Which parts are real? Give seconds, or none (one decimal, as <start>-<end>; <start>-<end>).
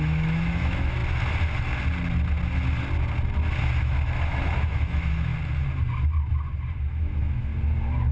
1.0-3.8; 5.3-6.8; 7.5-8.1